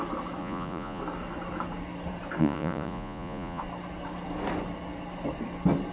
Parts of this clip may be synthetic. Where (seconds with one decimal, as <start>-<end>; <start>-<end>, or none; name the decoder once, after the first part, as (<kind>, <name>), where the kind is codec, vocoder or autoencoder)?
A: 0.4-1.0 (vocoder, Vocos); 2.4-3.6